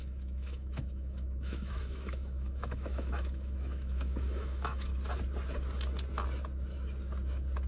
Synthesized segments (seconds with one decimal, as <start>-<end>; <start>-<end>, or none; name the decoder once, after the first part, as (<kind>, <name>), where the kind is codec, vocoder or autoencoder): 0.0-4.9 (autoencoder, DAC-VAE)